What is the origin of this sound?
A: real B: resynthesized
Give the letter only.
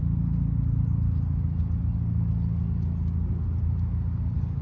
A